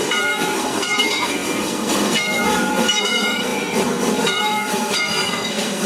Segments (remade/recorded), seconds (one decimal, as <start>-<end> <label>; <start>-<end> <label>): 0.0-5.9 remade